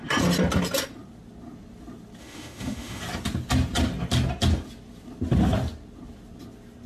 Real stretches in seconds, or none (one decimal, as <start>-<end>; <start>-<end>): 0.0-2.2; 3.0-6.9